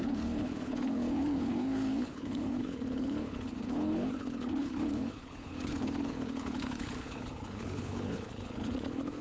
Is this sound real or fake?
fake